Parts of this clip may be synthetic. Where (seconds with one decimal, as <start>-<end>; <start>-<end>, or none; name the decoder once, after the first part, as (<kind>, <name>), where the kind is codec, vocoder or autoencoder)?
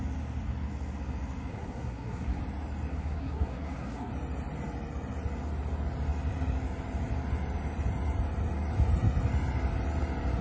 1.5-2.4 (codec, SNAC); 2.9-4.1